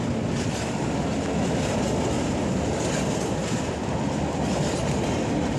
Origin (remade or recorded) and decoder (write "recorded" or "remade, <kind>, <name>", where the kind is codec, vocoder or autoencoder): recorded